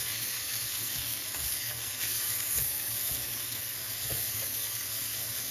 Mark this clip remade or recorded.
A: remade